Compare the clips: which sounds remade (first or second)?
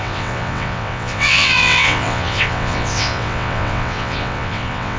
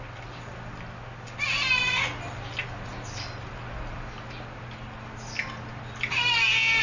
first